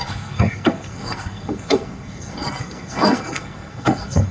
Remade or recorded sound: remade